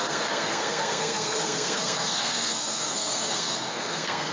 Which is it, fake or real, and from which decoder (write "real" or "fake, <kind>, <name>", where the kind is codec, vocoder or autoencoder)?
fake, codec, SNAC